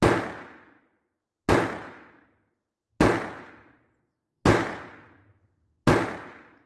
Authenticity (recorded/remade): recorded